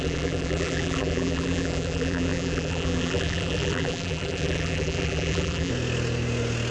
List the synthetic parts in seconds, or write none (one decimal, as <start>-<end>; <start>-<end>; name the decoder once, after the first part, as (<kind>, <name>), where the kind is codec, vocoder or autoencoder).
0.0-5.7 (vocoder, BigVGAN v2)

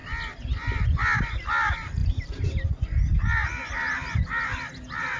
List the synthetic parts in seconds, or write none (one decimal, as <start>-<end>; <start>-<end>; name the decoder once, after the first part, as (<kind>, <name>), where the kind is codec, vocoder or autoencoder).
none

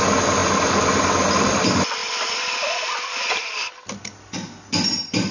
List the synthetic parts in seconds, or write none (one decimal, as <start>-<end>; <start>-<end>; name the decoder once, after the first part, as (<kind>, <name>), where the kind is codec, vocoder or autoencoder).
0.4-1.6 (vocoder, BigVGAN v2); 2.0-5.3

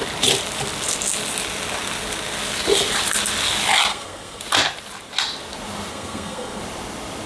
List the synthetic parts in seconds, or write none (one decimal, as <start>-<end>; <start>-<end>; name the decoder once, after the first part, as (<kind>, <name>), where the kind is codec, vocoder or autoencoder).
3.9-4.4 (codec, SNAC); 5.9-6.6

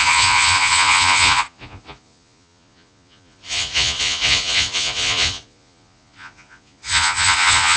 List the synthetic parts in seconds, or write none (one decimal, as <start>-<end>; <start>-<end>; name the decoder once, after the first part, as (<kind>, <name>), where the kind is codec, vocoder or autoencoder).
0.0-7.8 (vocoder, Vocos)

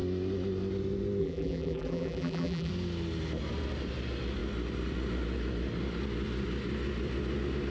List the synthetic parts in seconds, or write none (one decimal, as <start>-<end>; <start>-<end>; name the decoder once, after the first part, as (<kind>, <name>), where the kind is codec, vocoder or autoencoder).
1.2-2.7 (vocoder, BigVGAN v2)